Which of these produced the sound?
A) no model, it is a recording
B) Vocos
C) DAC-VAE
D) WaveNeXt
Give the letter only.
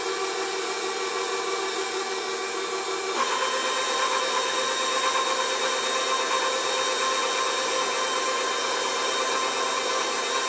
A